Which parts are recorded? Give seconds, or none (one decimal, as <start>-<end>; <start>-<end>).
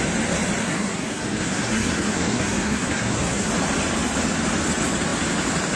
0.0-0.6; 3.5-5.8